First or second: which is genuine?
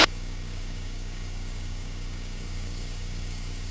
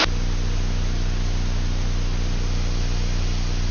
second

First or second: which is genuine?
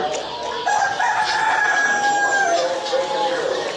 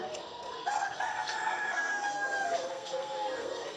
first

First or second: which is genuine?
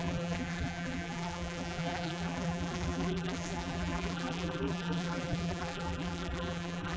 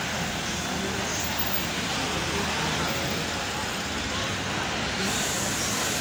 second